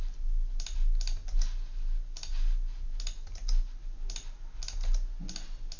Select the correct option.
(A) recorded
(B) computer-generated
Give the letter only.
A